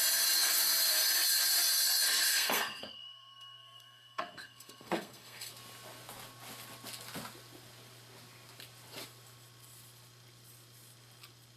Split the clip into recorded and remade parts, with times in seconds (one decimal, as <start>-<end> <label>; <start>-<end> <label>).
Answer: 0.0-2.3 recorded; 2.3-5.5 remade; 5.5-11.6 recorded